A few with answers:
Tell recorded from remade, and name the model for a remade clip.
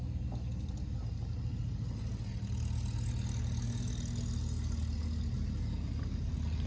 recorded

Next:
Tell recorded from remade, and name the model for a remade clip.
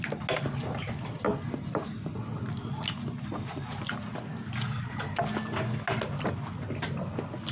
recorded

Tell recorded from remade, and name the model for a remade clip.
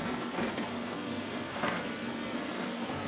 remade, codec, SNAC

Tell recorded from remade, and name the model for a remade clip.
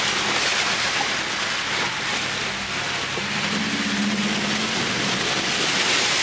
recorded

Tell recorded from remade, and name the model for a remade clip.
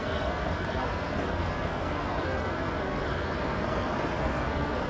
remade, codec, SNAC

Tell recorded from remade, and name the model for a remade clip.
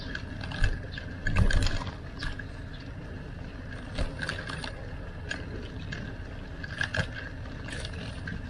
recorded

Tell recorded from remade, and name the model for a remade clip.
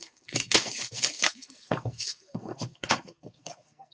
remade, codec, SNAC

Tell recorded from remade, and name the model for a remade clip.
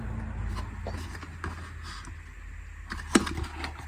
recorded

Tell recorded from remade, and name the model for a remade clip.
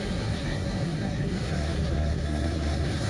remade, codec, SNAC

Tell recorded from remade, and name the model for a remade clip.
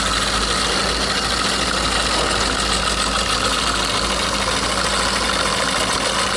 recorded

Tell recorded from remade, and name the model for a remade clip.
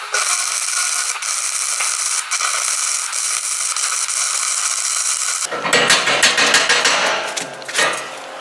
recorded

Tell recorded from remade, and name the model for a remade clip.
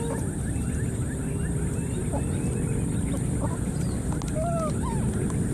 recorded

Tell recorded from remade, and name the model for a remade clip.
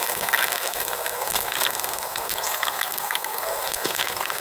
remade, codec, SNAC